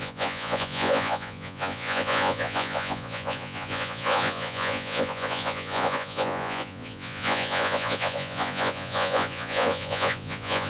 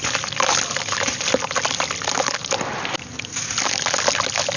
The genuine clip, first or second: second